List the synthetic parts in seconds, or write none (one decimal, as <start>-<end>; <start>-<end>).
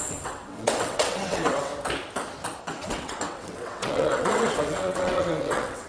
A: 0.0-1.7; 2.6-5.9